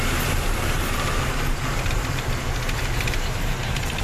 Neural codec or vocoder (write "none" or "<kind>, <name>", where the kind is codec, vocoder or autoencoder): vocoder, BigVGAN v2